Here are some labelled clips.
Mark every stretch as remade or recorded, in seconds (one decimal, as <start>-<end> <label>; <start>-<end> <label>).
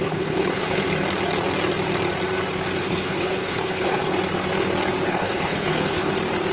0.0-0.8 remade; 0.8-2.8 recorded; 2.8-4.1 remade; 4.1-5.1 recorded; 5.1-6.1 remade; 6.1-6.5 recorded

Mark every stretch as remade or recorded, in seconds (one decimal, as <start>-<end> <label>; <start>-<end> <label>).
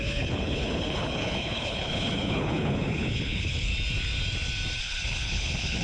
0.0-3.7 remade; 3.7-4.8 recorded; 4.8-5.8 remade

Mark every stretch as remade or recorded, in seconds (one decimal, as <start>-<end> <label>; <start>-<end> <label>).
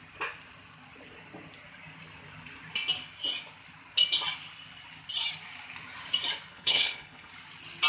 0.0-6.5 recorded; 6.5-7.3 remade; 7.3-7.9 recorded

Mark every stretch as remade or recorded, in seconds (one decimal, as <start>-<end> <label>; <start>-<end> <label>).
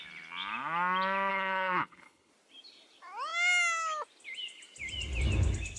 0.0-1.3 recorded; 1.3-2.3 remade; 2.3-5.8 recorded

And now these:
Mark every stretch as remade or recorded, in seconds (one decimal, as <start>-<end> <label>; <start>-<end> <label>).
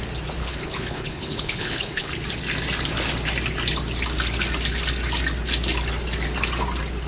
0.0-0.4 recorded; 0.4-2.1 remade; 2.1-7.1 recorded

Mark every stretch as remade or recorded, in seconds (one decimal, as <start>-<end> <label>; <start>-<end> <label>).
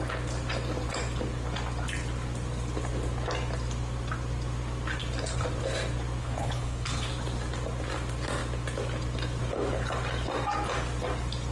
0.0-6.2 recorded; 6.2-7.1 remade; 7.1-11.5 recorded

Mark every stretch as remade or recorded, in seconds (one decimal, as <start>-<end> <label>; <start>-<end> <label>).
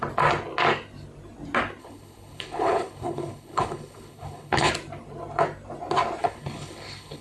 0.0-1.8 recorded; 1.8-4.7 remade; 4.7-6.2 recorded; 6.2-7.2 remade